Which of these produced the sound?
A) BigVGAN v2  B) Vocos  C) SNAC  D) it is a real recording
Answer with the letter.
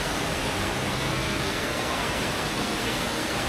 C